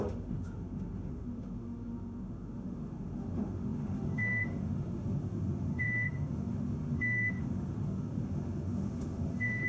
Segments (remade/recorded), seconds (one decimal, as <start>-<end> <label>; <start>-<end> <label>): 0.0-9.7 remade